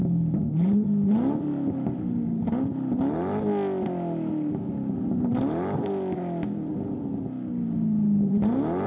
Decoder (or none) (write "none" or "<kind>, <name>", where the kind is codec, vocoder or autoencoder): none